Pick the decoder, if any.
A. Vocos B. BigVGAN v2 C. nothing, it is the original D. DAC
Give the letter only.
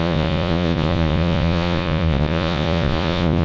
A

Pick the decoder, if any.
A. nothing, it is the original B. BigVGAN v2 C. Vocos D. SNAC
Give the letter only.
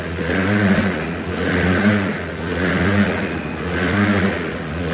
C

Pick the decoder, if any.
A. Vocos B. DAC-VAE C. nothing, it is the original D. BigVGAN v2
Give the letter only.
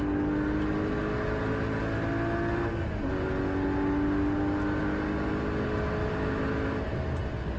C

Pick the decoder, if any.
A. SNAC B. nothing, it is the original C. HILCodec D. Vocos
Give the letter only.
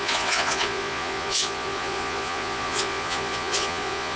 D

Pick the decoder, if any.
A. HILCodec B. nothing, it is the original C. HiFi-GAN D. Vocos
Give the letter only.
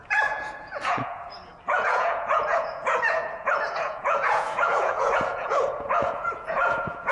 D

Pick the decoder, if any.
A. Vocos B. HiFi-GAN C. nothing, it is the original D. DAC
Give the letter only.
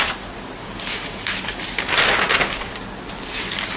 C